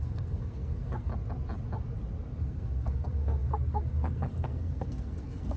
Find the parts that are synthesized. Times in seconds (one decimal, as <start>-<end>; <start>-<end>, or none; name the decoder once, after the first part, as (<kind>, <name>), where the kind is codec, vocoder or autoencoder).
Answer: 0.0-1.1 (codec, SNAC); 2.4-5.6